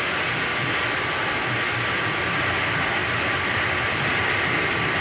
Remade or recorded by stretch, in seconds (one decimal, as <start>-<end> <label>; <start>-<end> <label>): 0.0-5.0 recorded